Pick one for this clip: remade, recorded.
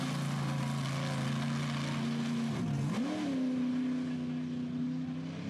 recorded